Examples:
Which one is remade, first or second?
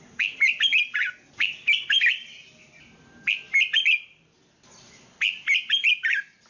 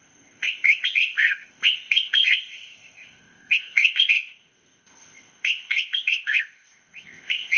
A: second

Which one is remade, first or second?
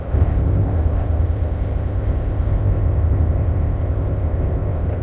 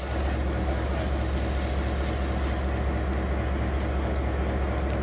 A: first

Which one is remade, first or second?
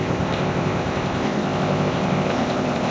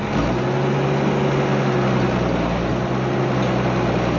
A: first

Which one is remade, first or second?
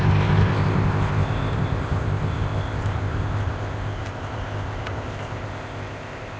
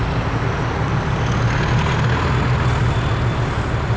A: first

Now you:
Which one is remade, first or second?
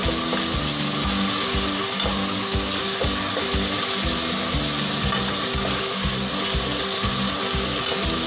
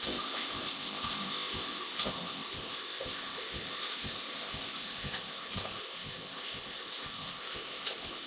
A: second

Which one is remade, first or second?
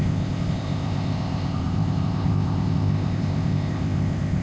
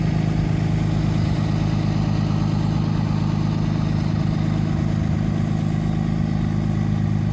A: first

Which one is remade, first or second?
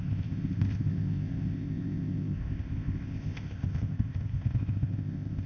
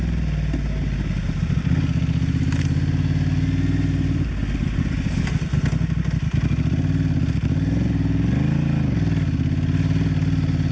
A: first